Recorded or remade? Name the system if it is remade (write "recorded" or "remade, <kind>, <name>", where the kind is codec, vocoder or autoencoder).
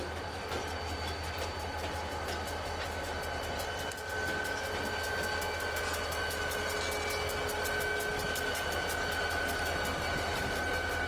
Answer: recorded